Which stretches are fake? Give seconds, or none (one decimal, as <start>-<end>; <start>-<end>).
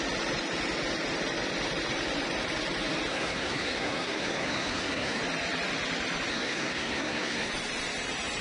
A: 3.1-5.2; 6.3-7.5